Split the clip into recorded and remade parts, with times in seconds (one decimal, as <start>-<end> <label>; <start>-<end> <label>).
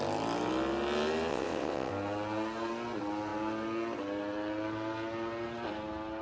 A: 0.0-1.3 recorded; 1.3-1.9 remade; 1.9-6.2 recorded